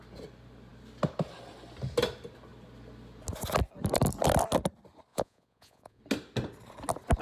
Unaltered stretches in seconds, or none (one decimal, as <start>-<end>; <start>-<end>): 0.0-5.1; 6.0-7.2